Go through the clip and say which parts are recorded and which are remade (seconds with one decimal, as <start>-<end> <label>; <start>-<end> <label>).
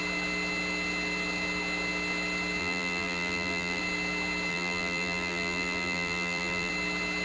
0.0-2.6 recorded; 2.6-3.8 remade; 3.8-4.5 recorded; 4.5-6.7 remade; 6.7-7.2 recorded